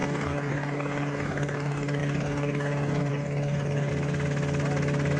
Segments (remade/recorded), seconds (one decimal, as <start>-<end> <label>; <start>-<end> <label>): 0.0-3.9 remade; 3.9-5.2 recorded